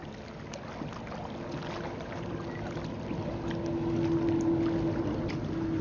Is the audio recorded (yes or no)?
yes